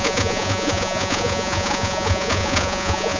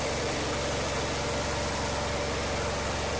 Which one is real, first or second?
second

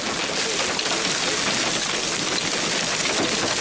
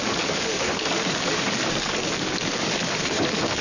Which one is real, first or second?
first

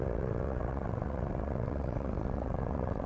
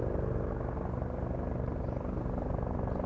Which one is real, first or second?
second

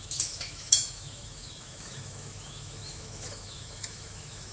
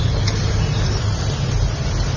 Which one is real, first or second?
second